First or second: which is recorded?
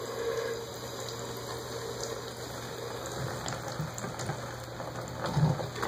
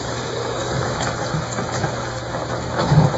first